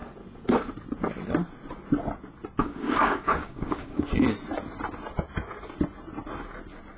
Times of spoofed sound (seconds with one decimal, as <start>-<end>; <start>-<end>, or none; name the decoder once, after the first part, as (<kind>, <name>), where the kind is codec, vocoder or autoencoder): 2.6-4.1 (codec, DAC)